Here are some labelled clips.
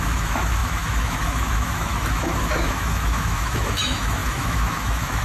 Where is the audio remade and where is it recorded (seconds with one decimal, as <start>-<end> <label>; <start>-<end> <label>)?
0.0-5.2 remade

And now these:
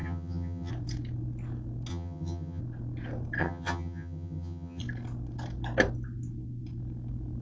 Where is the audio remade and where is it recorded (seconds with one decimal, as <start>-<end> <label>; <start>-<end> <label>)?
0.0-0.7 remade; 0.7-1.9 recorded; 1.9-2.6 remade; 2.6-3.4 recorded; 3.4-4.8 remade; 4.8-7.4 recorded

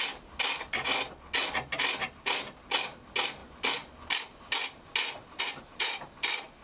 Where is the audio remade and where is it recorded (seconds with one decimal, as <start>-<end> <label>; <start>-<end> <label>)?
0.0-6.6 recorded

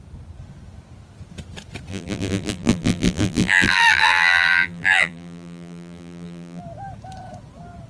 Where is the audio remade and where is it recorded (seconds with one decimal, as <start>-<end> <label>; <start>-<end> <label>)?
0.0-1.9 recorded; 1.9-6.6 remade; 6.6-7.9 recorded

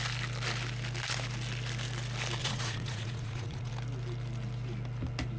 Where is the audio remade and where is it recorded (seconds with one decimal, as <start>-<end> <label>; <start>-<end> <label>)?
0.0-2.4 recorded; 2.4-3.7 remade; 3.7-5.4 recorded